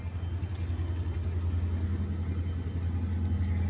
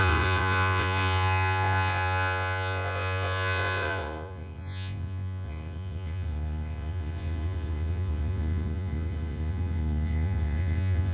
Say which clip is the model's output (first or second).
second